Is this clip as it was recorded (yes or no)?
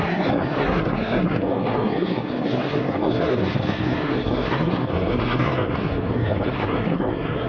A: no